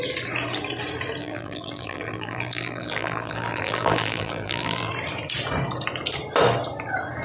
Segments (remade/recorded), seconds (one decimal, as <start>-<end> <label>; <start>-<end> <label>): 0.0-1.2 recorded; 1.2-4.9 remade; 4.9-7.2 recorded